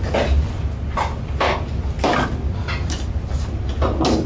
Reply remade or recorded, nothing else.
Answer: recorded